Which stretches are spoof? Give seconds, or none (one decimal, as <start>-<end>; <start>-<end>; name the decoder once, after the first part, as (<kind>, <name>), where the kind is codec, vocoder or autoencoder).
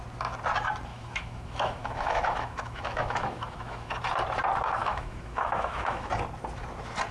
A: 0.9-3.9 (autoencoder, DAC-VAE); 4.8-6.1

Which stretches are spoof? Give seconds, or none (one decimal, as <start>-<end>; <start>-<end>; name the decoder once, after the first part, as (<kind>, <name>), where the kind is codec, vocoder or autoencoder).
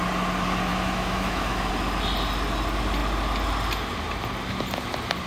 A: 0.7-1.7 (autoencoder, DAC-VAE)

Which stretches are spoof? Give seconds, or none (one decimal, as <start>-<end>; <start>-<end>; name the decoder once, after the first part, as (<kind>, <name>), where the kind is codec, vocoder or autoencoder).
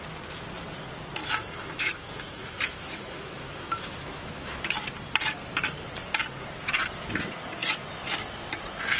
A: 1.2-4.7 (autoencoder, DAC-VAE)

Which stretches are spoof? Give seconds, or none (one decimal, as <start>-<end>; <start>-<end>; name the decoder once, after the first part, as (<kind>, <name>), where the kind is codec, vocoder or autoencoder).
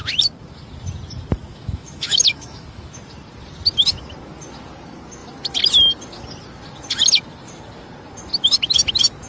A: 1.5-3.0 (autoencoder, DAC-VAE)